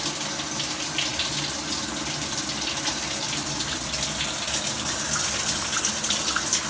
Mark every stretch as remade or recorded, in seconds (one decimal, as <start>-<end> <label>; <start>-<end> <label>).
0.0-6.7 recorded

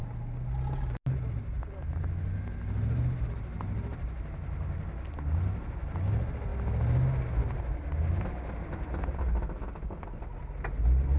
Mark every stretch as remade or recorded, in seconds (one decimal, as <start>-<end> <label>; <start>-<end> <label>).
0.0-11.2 recorded

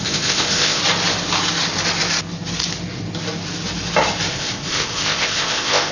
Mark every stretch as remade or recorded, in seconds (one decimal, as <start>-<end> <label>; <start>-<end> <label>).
0.0-0.8 remade; 0.8-4.3 recorded; 4.3-5.9 remade